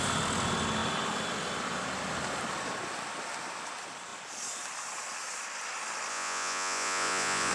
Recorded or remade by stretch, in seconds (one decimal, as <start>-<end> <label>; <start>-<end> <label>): 0.0-6.1 recorded; 6.1-7.5 remade